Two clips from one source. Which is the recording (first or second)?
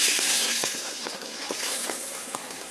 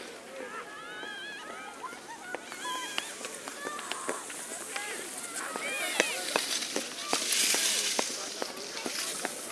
second